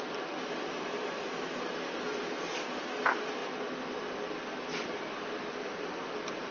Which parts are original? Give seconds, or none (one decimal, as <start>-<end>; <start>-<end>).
0.0-6.5